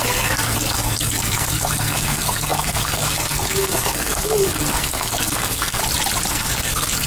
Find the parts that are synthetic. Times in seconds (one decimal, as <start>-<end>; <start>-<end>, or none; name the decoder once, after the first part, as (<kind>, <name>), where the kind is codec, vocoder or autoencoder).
0.0-5.8 (codec, SNAC); 6.3-7.1